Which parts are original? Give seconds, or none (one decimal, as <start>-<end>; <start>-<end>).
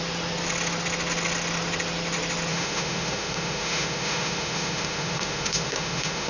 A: 0.0-2.5